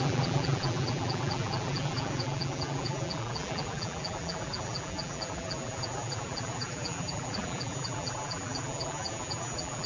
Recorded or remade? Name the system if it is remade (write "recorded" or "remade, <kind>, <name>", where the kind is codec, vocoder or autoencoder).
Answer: remade, vocoder, BigVGAN v2